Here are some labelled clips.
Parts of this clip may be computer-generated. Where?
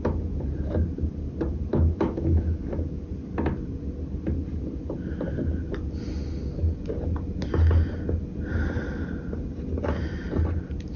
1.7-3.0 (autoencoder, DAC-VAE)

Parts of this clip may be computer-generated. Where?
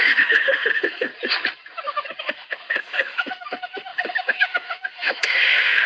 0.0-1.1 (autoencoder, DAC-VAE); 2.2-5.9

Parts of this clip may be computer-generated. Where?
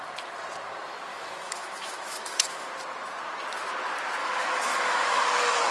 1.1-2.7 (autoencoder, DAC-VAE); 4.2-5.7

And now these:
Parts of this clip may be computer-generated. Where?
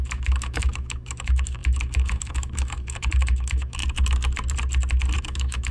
0.0-3.8 (autoencoder, DAC-VAE); 5.2-5.7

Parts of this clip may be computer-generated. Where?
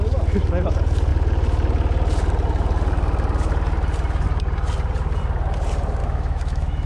6.0-6.9 (autoencoder, DAC-VAE)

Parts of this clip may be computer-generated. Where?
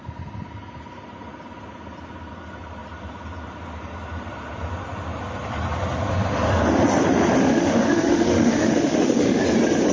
7.4-9.4 (autoencoder, DAC-VAE)